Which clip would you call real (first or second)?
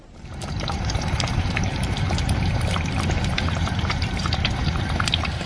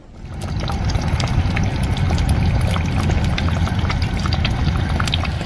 second